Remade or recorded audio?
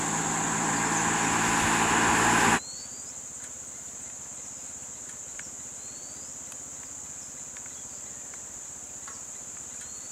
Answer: recorded